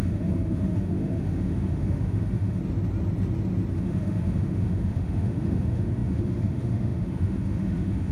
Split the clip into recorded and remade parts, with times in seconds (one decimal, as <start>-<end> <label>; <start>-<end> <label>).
0.0-2.6 remade; 2.6-3.7 recorded; 3.7-8.1 remade